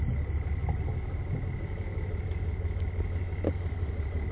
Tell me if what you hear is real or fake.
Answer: real